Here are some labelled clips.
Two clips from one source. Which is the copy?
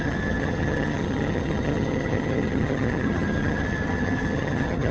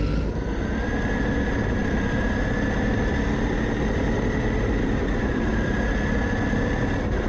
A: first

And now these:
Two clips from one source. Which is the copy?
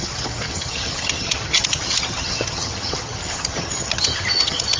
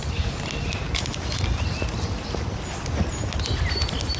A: first